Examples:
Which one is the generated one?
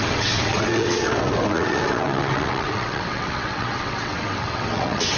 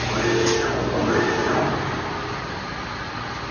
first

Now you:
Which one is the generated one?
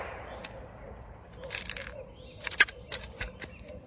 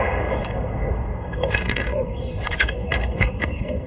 second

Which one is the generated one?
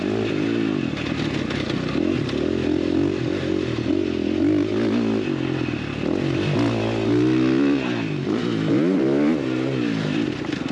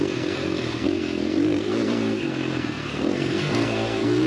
second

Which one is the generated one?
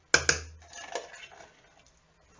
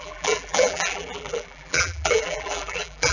second